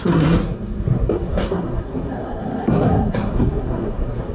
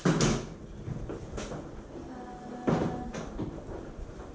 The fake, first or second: first